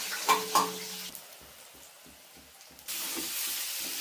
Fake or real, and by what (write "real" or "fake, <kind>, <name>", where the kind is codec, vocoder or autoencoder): real